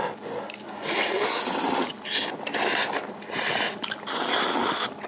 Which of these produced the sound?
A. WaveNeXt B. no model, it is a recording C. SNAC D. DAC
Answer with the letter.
B